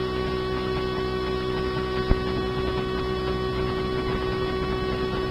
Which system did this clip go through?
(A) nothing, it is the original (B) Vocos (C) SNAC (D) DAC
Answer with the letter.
A